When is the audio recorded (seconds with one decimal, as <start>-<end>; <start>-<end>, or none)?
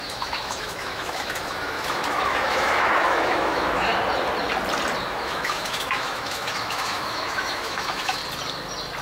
3.9-5.1; 8.2-9.0